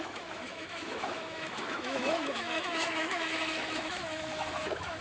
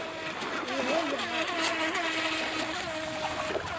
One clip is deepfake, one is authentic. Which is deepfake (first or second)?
first